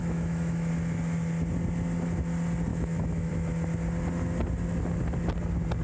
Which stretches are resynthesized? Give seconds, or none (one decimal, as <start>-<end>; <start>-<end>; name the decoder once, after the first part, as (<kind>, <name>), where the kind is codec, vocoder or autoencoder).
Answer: 0.0-0.7 (autoencoder, DAC-VAE); 2.7-3.3